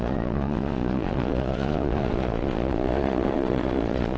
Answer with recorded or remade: remade